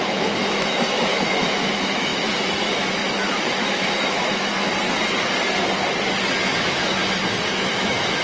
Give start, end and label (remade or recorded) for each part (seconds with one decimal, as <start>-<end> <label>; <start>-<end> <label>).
0.0-2.1 remade; 2.1-2.6 recorded; 2.6-4.7 remade; 4.7-6.4 recorded; 6.4-7.0 remade; 7.0-7.5 recorded; 7.5-8.2 remade